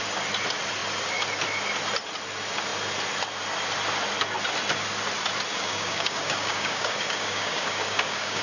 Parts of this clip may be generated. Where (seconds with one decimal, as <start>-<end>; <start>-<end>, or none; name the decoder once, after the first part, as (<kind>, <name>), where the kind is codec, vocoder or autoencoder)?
5.5-8.4 (codec, DAC)